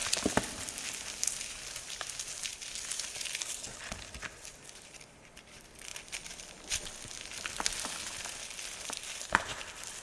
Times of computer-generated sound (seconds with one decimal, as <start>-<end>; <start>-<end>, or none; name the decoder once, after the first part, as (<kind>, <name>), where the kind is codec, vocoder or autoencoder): none